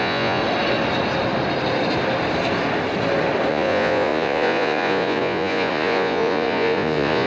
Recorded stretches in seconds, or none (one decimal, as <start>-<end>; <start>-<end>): 0.4-3.5